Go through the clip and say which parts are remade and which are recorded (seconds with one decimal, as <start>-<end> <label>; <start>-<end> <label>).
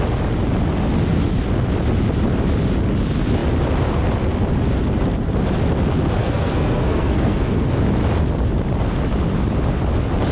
0.0-6.2 recorded; 6.2-7.7 remade; 7.7-10.3 recorded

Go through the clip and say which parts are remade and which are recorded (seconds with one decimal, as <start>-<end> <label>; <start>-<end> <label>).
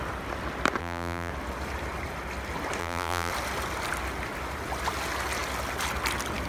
0.0-0.8 recorded; 0.8-1.3 remade; 1.3-2.8 recorded; 2.8-3.3 remade; 3.3-6.5 recorded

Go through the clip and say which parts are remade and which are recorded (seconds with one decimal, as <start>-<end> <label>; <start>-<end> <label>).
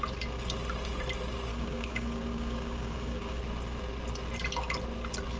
0.0-1.5 recorded; 1.5-3.4 remade; 3.4-5.4 recorded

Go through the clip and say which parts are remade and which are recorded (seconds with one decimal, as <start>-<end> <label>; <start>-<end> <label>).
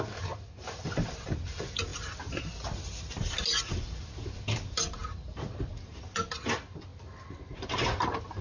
0.0-8.4 recorded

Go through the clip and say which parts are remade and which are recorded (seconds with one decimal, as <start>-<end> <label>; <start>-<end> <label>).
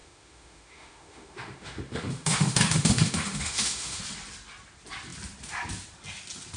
0.0-4.0 remade; 4.0-6.6 recorded